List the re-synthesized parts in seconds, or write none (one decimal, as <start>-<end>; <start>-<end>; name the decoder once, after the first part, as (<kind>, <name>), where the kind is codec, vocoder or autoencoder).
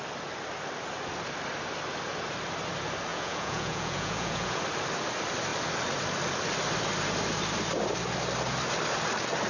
3.1-4.6 (vocoder, Vocos)